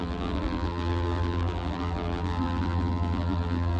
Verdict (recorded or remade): remade